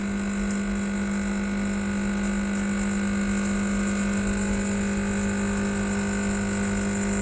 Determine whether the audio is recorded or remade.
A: recorded